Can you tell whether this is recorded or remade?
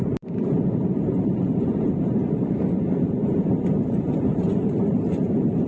remade